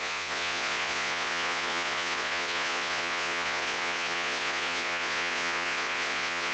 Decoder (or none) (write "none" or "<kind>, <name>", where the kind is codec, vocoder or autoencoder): vocoder, Vocos